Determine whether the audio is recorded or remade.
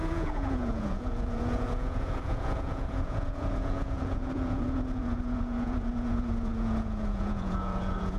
remade